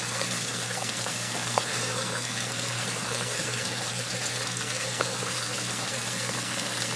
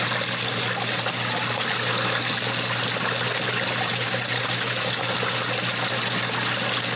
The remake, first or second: first